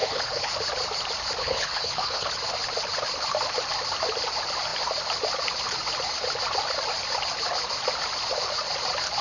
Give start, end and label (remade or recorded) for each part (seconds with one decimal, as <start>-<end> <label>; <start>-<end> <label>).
0.0-0.5 remade; 0.5-1.4 recorded; 1.4-2.3 remade; 2.3-9.2 recorded